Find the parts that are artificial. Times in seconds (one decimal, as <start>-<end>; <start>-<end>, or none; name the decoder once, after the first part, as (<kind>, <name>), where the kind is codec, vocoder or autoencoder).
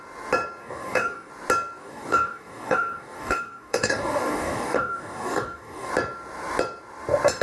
0.6-1.3 (codec, DAC); 1.8-5.9